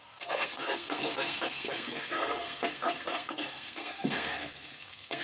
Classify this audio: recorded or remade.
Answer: remade